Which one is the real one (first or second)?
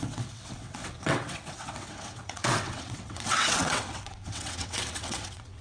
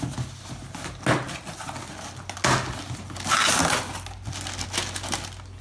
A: second